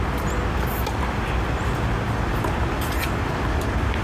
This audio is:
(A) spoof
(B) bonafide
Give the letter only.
B